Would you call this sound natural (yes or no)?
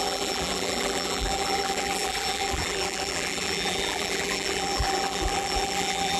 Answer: no